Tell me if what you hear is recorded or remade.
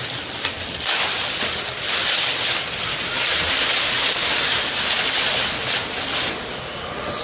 recorded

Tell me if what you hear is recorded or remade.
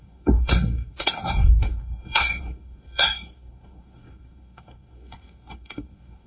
remade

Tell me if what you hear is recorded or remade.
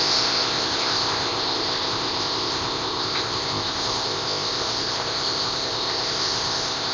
remade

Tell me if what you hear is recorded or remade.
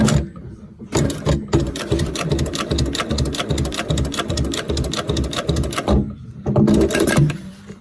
remade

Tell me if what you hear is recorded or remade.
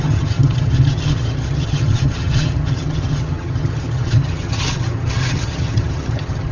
remade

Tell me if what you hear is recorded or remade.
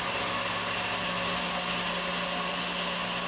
recorded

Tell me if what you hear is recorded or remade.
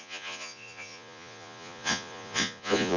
remade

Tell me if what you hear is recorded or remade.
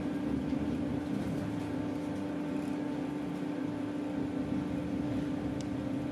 recorded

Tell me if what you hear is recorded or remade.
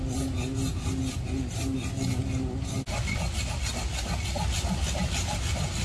recorded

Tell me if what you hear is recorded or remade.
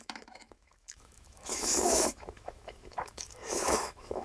remade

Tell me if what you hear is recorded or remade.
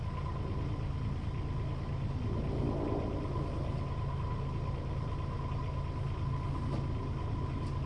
recorded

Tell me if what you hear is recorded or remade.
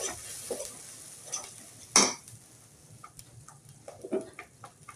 recorded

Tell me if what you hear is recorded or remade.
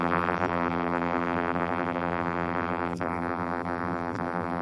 remade